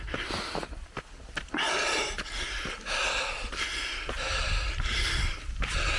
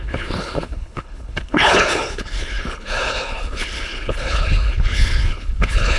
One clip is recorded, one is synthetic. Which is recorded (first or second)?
first